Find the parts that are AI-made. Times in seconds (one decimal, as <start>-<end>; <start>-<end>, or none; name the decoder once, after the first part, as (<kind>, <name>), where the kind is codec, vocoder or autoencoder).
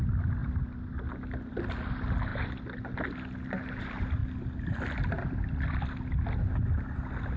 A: none